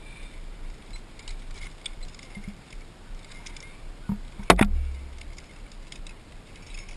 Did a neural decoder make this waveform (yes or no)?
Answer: no